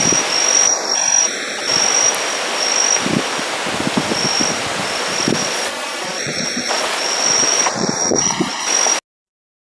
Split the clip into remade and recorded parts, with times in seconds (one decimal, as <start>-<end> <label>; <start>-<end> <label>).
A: 0.0-5.4 recorded; 5.4-8.6 remade; 8.6-9.7 recorded